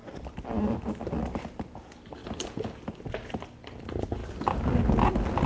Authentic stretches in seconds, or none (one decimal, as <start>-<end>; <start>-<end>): 0.0-5.5